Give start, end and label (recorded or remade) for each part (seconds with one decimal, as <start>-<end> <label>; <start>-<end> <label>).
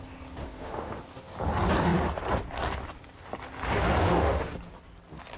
0.0-0.4 recorded; 0.4-1.0 remade; 1.0-4.0 recorded; 4.0-4.5 remade; 4.5-5.4 recorded